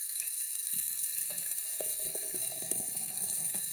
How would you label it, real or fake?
fake